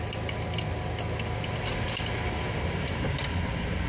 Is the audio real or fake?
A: real